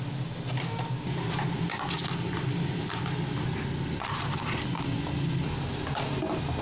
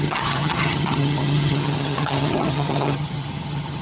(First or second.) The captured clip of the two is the first